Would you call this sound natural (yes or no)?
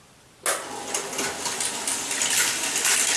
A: yes